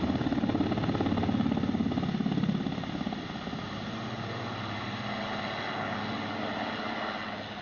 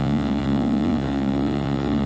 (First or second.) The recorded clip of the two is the first